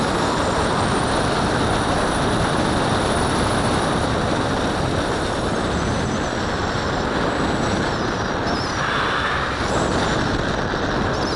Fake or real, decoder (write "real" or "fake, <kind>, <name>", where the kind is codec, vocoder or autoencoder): real